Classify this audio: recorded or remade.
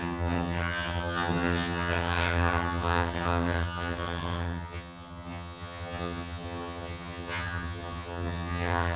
remade